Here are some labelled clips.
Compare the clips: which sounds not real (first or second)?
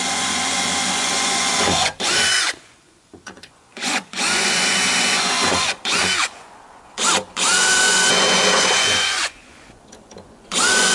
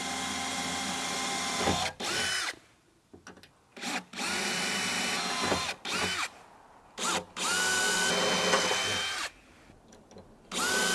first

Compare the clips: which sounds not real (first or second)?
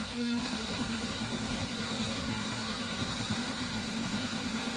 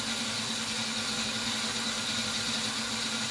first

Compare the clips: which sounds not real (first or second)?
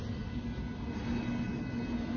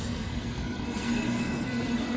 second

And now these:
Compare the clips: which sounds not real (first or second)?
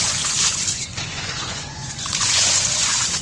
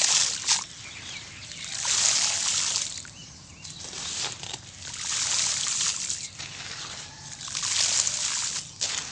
first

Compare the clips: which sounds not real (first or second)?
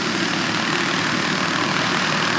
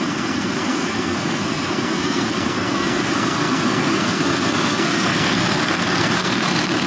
second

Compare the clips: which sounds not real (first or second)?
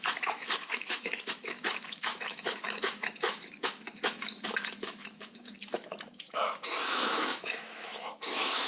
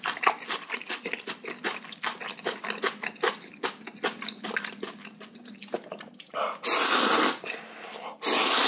first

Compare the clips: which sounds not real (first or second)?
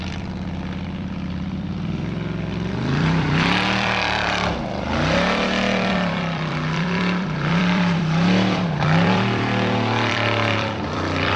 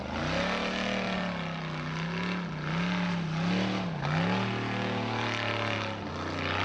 first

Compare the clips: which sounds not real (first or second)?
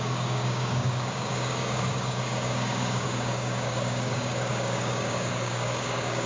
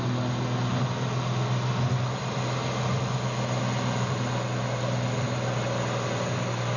first